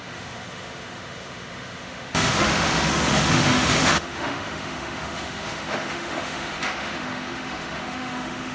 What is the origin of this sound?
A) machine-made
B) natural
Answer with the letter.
A